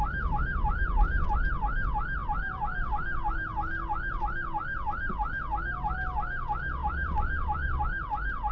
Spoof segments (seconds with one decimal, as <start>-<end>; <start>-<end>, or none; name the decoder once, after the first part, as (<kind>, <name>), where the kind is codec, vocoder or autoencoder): 2.2-2.9 (vocoder, BigVGAN v2); 6.8-7.8